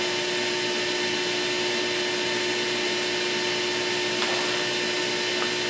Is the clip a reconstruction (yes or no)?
no